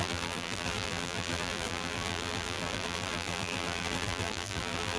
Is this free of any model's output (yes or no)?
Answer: no